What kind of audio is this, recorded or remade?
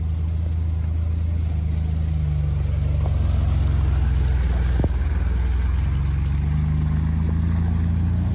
recorded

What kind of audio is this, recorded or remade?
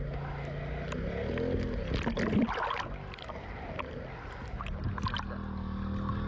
recorded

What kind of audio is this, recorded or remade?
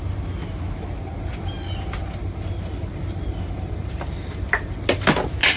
recorded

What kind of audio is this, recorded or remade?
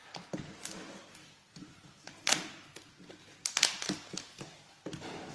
recorded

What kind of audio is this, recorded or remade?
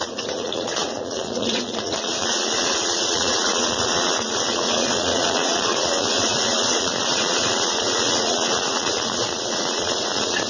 remade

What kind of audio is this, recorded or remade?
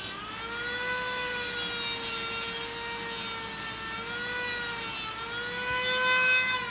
recorded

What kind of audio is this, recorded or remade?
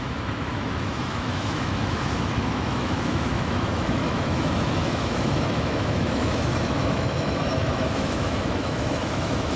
remade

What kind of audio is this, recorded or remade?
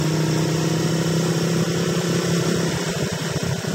recorded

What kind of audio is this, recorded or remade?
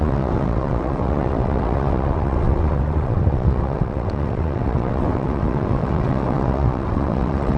remade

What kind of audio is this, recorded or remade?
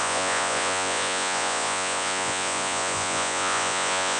remade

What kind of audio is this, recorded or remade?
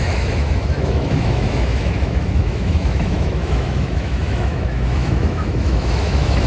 remade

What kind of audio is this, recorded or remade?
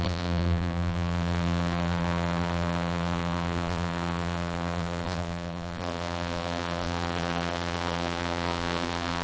remade